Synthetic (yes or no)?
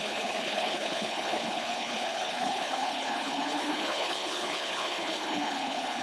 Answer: yes